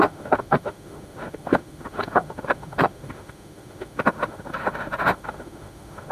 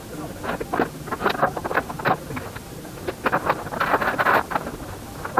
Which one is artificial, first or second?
first